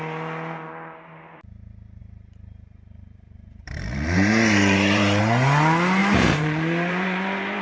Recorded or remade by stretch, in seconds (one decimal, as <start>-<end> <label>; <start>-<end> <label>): 0.0-2.0 recorded; 2.0-5.2 remade; 5.2-6.0 recorded; 6.0-7.6 remade